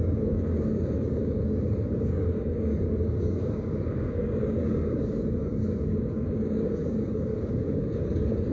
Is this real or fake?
fake